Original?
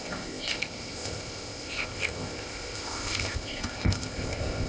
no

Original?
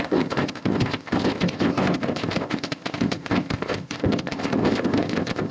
no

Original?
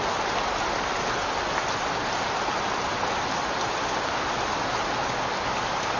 yes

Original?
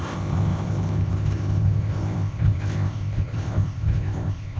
no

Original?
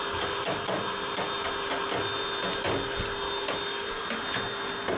yes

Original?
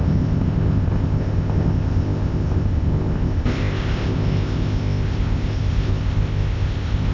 no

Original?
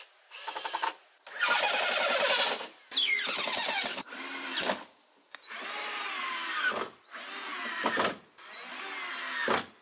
yes